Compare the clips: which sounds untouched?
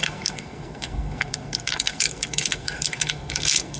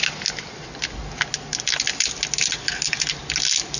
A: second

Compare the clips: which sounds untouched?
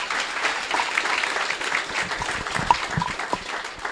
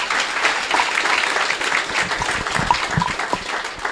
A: second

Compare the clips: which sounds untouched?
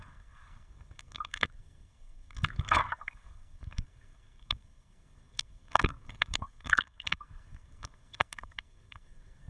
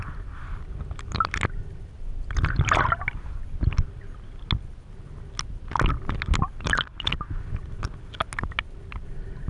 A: second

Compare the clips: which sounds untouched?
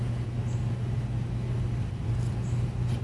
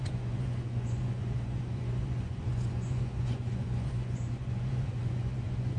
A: first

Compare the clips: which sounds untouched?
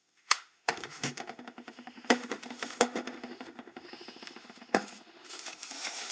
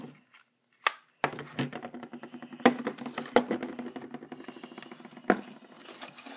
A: second